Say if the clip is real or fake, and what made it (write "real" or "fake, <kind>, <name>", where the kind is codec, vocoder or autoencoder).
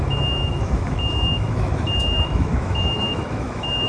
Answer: fake, autoencoder, DAC-VAE